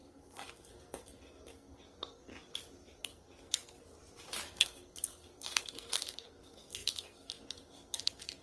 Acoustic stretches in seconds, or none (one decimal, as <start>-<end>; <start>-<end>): 2.3-3.0; 4.0-4.5